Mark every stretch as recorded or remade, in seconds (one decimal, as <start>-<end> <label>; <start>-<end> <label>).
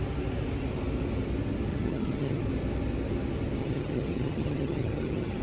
0.0-1.7 recorded; 1.7-2.4 remade; 2.4-3.6 recorded; 3.6-5.4 remade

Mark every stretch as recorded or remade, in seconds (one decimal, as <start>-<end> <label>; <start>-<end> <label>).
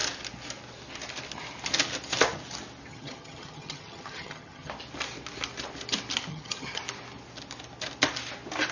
0.0-2.9 recorded; 2.9-4.7 remade; 4.7-6.3 recorded; 6.3-6.8 remade; 6.8-8.7 recorded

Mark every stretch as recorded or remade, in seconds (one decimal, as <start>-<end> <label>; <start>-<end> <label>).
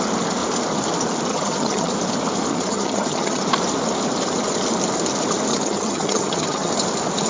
0.0-1.3 recorded; 1.3-1.9 remade; 1.9-2.5 recorded; 2.5-3.4 remade; 3.4-5.5 recorded; 5.5-6.7 remade; 6.7-7.3 recorded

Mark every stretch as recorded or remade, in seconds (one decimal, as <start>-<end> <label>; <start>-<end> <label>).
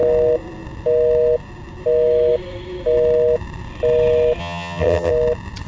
0.0-4.4 recorded; 4.4-5.1 remade; 5.1-5.7 recorded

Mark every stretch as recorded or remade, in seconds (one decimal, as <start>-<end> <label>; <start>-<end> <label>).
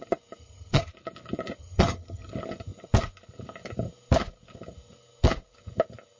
0.0-0.4 recorded; 0.4-0.9 remade; 0.9-1.6 recorded; 1.6-2.3 remade; 2.3-6.2 recorded